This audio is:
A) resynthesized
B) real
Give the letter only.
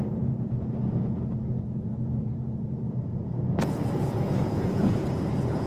A